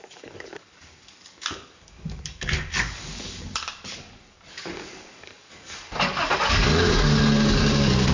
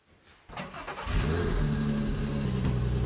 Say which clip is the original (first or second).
second